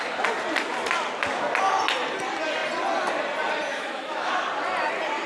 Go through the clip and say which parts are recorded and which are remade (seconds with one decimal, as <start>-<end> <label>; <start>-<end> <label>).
0.0-3.7 recorded; 3.7-4.3 remade; 4.3-5.3 recorded